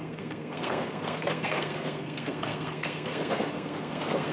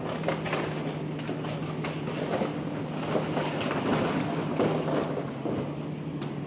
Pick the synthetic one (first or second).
first